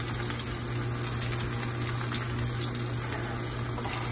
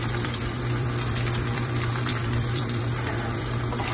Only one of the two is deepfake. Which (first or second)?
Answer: second